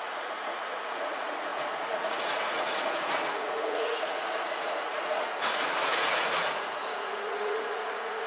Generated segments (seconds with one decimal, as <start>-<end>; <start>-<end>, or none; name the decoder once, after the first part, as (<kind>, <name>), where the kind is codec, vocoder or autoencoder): 0.0-8.3 (vocoder, Vocos)